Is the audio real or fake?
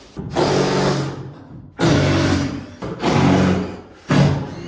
real